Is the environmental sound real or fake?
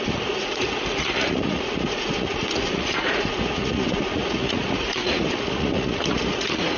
fake